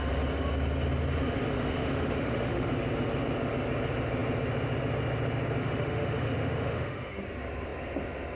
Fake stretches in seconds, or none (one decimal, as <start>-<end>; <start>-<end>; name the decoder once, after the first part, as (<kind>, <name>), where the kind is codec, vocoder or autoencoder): 1.5-2.7 (autoencoder, DAC-VAE); 5.6-7.2